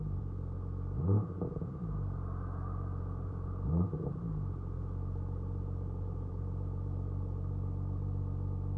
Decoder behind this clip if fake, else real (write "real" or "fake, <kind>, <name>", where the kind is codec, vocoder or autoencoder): fake, vocoder, BigVGAN v2